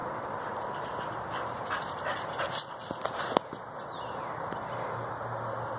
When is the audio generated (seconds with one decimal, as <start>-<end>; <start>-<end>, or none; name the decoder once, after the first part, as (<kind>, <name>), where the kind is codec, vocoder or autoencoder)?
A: 0.0-3.5 (vocoder, BigVGAN v2)

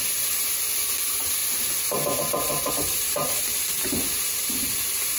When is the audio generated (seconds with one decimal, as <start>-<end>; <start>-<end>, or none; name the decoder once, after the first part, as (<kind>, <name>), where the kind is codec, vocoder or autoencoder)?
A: none

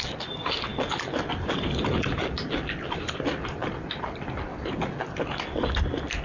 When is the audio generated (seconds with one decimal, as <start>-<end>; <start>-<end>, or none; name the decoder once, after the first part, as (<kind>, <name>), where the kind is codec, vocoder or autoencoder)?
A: none